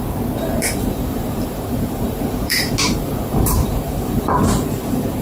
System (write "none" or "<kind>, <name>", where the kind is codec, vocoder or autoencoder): vocoder, BigVGAN v2